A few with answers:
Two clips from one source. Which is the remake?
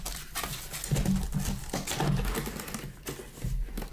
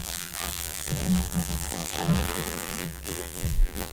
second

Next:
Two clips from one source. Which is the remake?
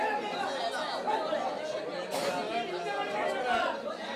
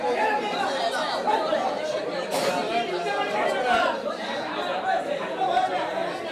second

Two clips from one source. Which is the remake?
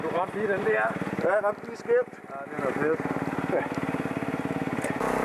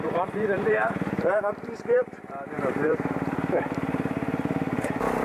second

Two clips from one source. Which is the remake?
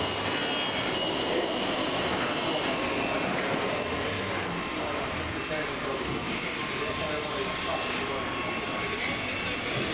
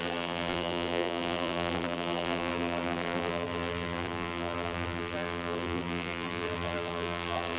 second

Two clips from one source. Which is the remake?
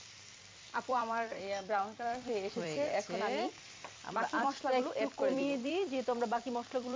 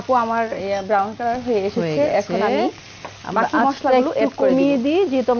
first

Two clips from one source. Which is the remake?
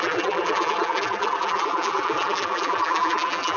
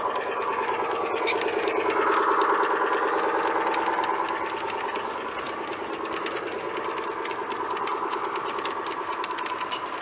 first